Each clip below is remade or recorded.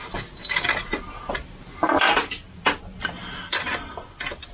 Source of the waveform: recorded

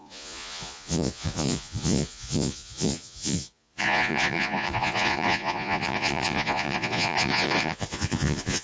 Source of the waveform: remade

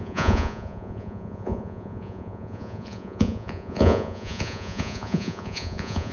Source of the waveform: remade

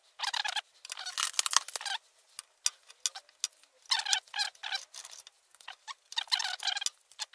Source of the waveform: recorded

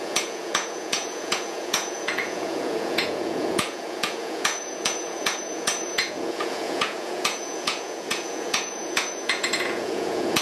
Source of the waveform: remade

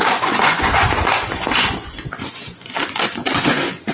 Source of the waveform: remade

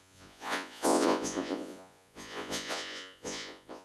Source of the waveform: remade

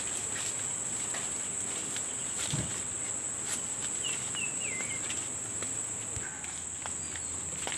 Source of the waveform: recorded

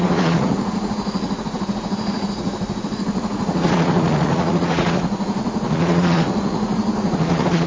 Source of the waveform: remade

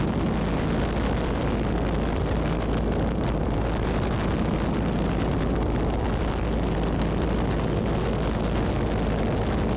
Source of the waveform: recorded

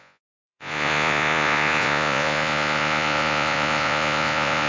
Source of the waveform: remade